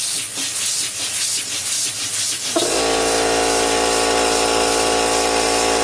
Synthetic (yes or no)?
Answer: no